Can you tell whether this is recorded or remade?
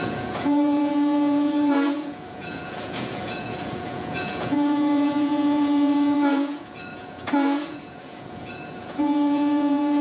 remade